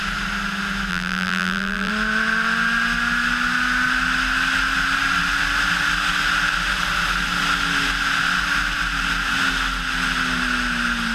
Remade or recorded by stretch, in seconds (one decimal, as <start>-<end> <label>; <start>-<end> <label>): 0.0-0.9 recorded; 0.9-1.9 remade; 1.9-11.1 recorded

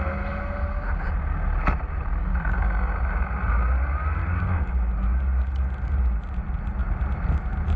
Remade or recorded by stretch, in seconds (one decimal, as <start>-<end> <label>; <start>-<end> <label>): 0.0-2.3 recorded; 2.3-3.3 remade; 3.3-4.2 recorded; 4.2-4.9 remade; 4.9-7.8 recorded

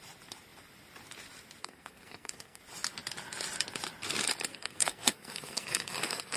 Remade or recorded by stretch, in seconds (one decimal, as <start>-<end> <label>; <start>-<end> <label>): 0.0-1.6 recorded; 1.6-2.6 remade; 2.6-4.5 recorded; 4.5-6.4 remade

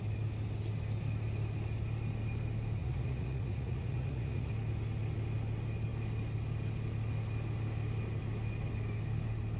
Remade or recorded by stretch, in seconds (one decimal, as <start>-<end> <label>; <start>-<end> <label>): 0.0-2.8 recorded; 2.8-4.5 remade; 4.5-9.6 recorded

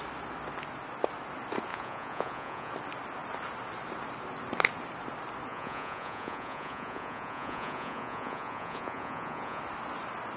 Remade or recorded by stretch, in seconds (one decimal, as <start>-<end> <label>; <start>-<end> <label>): 0.0-1.7 recorded; 1.7-2.7 remade; 2.7-5.5 recorded; 5.5-9.6 remade; 9.6-10.4 recorded

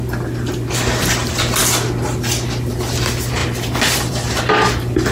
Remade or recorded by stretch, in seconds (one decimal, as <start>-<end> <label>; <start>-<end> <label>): 0.0-3.4 recorded; 3.4-4.3 remade; 4.3-5.1 recorded

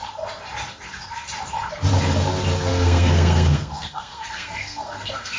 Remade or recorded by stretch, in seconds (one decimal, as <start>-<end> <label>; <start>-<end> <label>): 0.0-2.7 recorded; 2.7-5.4 remade